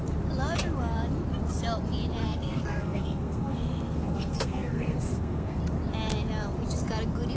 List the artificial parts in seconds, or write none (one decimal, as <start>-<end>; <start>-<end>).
2.2-5.6